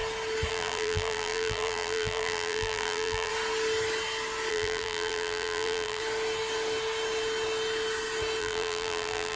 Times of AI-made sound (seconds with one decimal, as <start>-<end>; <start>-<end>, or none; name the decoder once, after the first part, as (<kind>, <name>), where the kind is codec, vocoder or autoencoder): 0.5-3.3 (vocoder, BigVGAN v2); 4.5-6.0; 8.4-9.4